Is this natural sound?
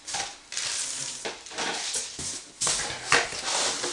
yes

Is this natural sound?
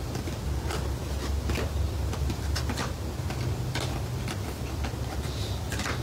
yes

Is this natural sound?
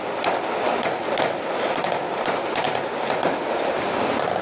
yes